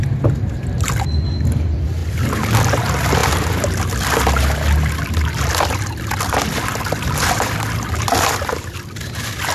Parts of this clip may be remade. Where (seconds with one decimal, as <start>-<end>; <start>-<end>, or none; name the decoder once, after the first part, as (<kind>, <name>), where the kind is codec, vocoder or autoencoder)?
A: none